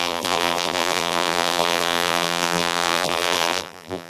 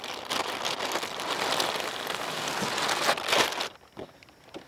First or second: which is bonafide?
second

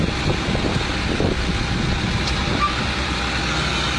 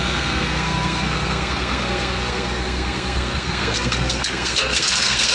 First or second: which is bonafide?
first